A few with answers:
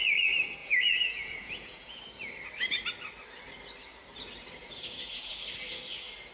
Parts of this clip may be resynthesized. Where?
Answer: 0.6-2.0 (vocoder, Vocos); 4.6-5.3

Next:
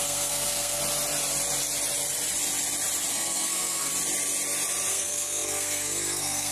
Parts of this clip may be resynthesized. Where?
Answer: 0.0-0.8 (codec, SNAC); 3.1-3.9; 4.9-6.5

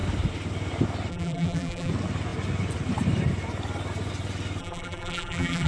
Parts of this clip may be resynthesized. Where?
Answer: 1.1-1.9 (vocoder, BigVGAN v2); 4.6-5.7

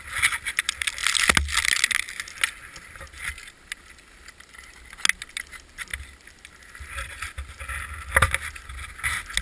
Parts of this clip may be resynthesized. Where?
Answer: none

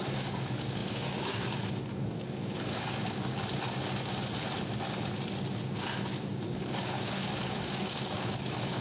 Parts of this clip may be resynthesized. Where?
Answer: 0.0-3.3 (codec, DAC); 5.5-8.8

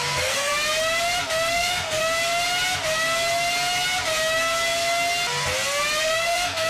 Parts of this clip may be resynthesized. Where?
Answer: 0.0-0.5 (codec, SNAC); 1.5-2.0; 6.0-6.7